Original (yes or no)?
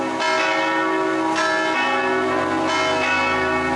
yes